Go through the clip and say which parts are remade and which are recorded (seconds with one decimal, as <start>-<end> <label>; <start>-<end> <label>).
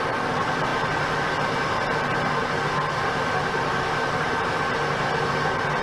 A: 0.0-5.8 recorded